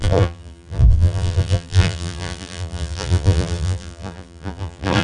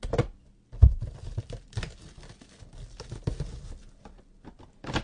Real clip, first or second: second